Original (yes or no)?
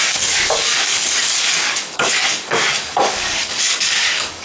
no